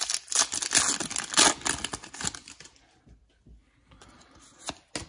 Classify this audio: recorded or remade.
recorded